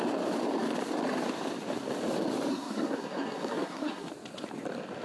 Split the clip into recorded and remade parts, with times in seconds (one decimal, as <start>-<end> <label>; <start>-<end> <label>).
0.0-2.5 recorded; 2.5-4.1 remade; 4.1-5.0 recorded